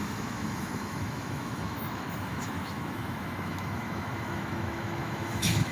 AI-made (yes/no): yes